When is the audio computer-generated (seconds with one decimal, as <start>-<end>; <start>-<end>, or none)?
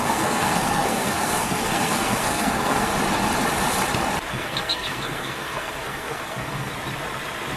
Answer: 0.0-2.9; 4.3-6.7